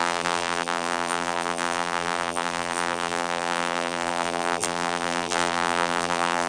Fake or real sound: fake